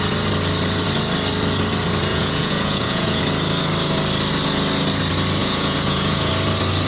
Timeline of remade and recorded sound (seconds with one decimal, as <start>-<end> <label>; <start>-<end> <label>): 0.0-2.1 recorded; 2.1-3.2 remade; 3.2-5.4 recorded; 5.4-6.3 remade; 6.3-6.9 recorded